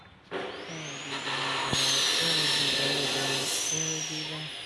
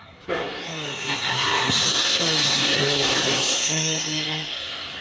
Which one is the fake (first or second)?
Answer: second